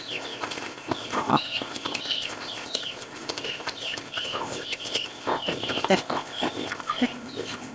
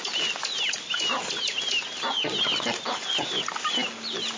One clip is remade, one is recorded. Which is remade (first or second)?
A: first